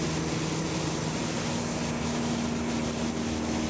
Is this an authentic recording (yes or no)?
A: yes